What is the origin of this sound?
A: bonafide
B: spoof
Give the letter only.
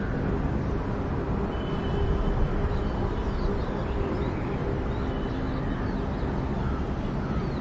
A